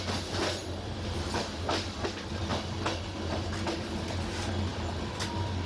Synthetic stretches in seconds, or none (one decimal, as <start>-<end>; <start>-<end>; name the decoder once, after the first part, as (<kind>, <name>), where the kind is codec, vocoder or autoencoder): 0.6-1.3 (vocoder, BigVGAN v2)

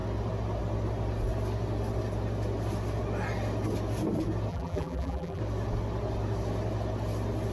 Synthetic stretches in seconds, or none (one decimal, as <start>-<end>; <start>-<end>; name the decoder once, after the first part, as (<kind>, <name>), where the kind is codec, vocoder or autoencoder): 4.5-5.4 (vocoder, BigVGAN v2)

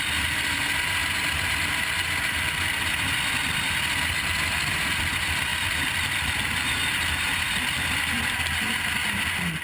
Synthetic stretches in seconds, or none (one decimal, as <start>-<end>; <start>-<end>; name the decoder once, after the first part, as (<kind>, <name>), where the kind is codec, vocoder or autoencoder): none

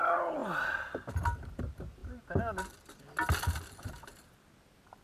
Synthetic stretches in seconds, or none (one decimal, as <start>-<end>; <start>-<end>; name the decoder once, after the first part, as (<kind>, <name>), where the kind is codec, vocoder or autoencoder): none

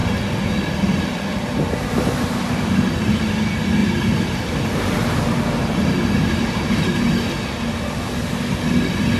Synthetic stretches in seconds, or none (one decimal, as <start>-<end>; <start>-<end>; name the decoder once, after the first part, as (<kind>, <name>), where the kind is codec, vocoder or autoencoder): 3.8-6.7 (vocoder, BigVGAN v2)

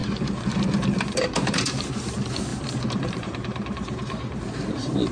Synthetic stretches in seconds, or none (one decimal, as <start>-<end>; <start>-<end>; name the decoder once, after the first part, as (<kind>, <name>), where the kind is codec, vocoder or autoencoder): 0.0-1.6 (vocoder, BigVGAN v2); 2.5-5.1

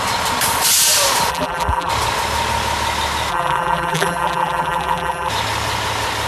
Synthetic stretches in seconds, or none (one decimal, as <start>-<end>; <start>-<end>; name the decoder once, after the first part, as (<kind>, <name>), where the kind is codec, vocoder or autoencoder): 1.3-1.9 (vocoder, BigVGAN v2); 3.3-5.3